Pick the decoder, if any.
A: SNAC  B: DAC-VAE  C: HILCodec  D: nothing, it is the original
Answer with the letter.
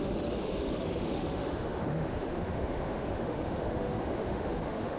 B